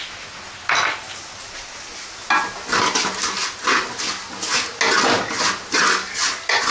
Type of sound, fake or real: real